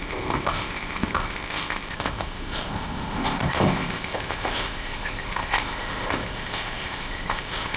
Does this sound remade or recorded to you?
remade